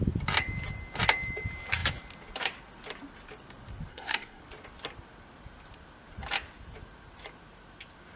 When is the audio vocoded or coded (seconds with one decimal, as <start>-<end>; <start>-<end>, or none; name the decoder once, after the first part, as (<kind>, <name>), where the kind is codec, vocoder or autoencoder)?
3.9-4.4 (codec, SNAC)